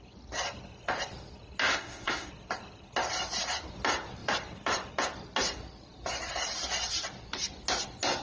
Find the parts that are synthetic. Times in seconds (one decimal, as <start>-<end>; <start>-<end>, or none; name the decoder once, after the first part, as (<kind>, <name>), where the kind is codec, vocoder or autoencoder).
1.7-2.3 (autoencoder, DAC-VAE)